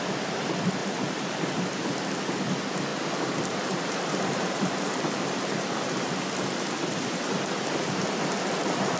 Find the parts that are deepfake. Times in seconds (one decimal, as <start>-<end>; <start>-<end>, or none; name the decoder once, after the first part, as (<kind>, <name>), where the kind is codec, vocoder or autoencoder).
0.8-1.8 (vocoder, BigVGAN v2); 2.9-6.1